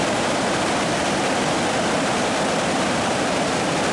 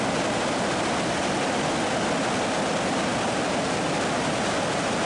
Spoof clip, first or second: first